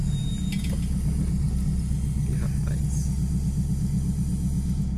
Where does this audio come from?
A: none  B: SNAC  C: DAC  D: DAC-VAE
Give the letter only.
A